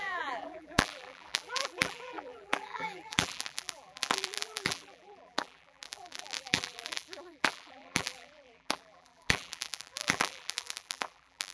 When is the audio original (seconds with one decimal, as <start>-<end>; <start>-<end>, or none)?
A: none